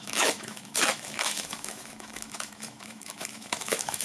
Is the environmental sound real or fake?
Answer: fake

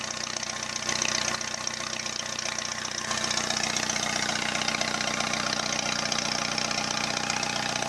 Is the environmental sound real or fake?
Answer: real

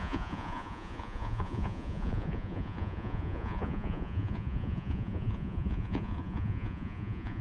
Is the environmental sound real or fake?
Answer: fake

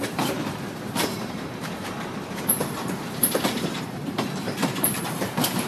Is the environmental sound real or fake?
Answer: fake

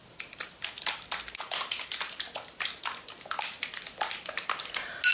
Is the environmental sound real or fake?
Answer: real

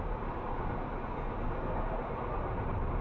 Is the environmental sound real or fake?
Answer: real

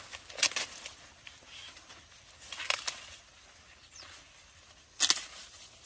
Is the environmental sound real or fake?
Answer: real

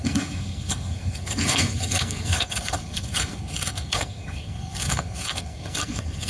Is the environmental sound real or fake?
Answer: fake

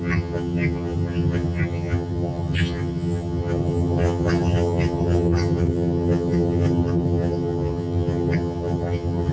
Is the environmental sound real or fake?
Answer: fake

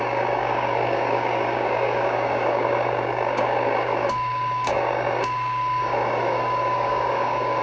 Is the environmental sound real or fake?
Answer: fake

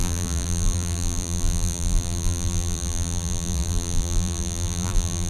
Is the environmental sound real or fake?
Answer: fake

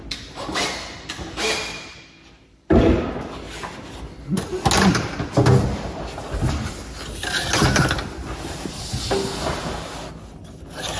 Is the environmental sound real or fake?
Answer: real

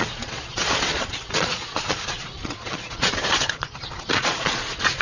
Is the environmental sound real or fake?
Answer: fake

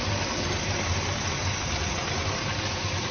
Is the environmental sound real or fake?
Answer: real